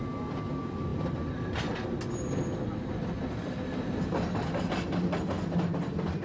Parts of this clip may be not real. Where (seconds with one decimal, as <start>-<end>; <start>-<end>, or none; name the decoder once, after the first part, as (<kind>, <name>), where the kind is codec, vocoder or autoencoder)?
none